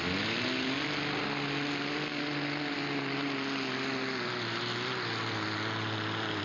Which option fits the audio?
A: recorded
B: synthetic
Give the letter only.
A